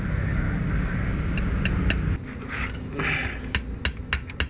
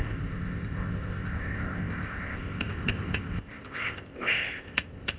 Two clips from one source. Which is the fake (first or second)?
second